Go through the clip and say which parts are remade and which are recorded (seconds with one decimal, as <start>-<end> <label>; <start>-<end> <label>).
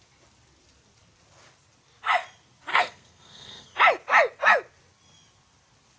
0.0-2.7 recorded; 2.7-3.8 remade; 3.8-6.0 recorded